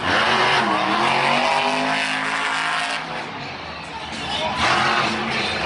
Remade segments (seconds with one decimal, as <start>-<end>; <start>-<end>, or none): 0.0-0.6